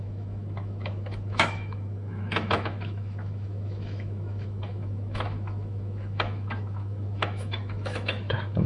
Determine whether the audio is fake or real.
fake